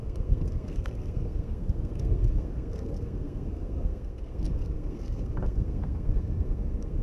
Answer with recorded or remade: remade